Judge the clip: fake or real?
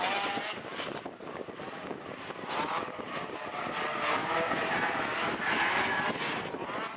real